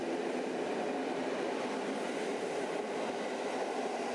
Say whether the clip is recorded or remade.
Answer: recorded